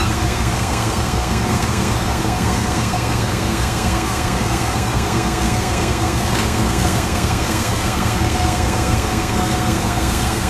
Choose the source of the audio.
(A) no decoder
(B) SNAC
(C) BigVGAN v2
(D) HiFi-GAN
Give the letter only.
B